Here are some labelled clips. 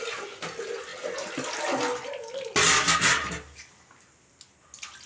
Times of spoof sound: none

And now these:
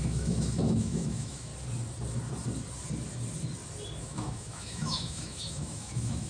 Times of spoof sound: 0.0-1.5 (autoencoder, DAC-VAE); 4.0-6.3